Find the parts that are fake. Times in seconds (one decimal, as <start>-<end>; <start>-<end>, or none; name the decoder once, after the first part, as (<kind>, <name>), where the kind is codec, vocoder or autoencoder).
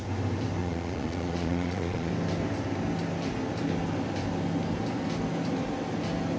0.6-2.1 (vocoder, Vocos)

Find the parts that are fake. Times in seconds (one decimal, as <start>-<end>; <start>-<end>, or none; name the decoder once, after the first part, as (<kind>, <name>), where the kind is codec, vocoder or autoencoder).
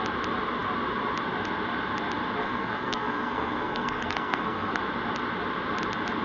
2.4-4.8 (codec, SNAC)